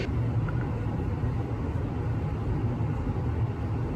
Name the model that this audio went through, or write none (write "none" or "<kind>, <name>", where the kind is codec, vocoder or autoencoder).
none